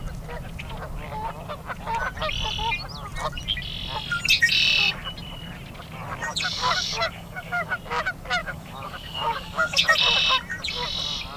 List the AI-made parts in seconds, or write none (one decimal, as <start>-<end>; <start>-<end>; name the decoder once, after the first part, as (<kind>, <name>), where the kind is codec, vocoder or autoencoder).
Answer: 6.5-7.7 (codec, DAC); 8.4-9.8